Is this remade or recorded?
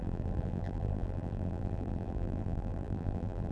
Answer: remade